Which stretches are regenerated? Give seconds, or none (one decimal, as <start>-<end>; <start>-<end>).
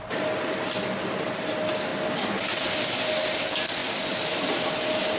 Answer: none